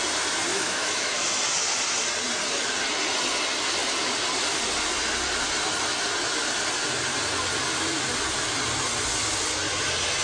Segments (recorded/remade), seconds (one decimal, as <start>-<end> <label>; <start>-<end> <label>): 0.0-0.5 recorded; 0.5-1.3 remade; 1.3-10.2 recorded